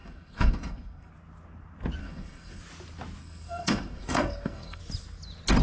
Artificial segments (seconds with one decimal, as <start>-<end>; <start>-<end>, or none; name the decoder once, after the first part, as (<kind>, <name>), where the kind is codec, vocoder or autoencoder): 0.0-1.1 (codec, SNAC); 2.0-2.6; 3.2-4.8